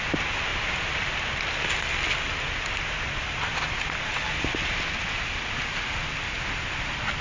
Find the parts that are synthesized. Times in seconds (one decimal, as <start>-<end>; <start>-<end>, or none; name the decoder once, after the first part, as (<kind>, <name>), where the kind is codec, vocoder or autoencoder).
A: none